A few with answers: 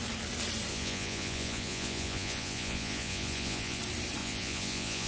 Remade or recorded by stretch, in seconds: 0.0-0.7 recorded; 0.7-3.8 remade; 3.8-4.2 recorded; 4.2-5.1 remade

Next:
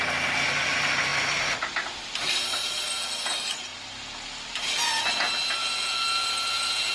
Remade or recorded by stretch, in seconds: 0.0-5.6 recorded; 5.6-6.9 remade

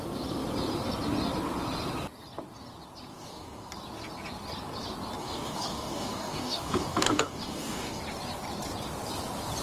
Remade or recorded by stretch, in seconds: 0.0-3.1 recorded; 3.1-3.7 remade; 3.7-5.2 recorded; 5.2-8.0 remade; 8.0-9.6 recorded

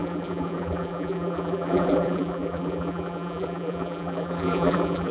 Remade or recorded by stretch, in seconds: 0.0-5.1 remade

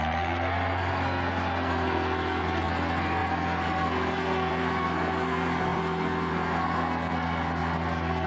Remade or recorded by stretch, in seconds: 0.0-8.3 remade

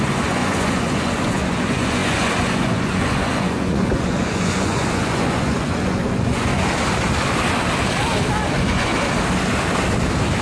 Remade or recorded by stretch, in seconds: 0.0-6.5 remade; 6.5-8.5 recorded; 8.5-8.9 remade; 8.9-10.4 recorded